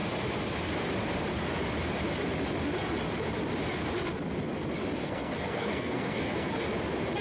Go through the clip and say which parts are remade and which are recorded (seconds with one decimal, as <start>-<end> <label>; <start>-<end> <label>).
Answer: 0.0-5.0 recorded; 5.0-6.5 remade; 6.5-7.2 recorded